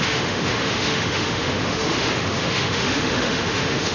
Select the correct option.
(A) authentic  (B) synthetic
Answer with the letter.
B